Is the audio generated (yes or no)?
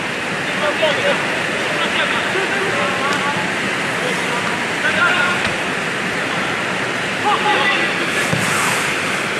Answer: no